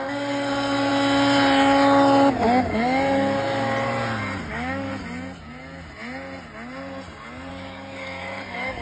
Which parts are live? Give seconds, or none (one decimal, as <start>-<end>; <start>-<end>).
0.9-4.5; 4.9-7.5